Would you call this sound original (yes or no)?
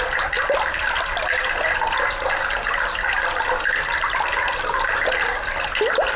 yes